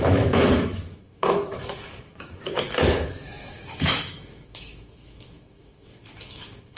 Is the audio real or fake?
fake